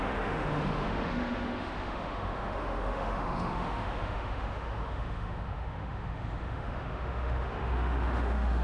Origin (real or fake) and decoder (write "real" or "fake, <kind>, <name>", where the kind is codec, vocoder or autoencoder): fake, autoencoder, DAC-VAE